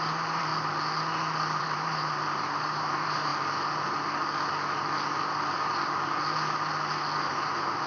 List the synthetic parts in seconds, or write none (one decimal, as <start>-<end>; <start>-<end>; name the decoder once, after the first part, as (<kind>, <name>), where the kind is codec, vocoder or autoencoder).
0.0-0.5 (vocoder, BigVGAN v2); 1.6-3.3; 7.2-7.9